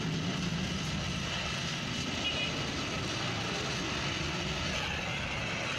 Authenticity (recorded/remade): recorded